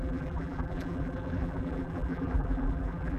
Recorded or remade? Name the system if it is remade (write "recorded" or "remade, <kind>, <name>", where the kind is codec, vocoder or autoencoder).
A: remade, vocoder, BigVGAN v2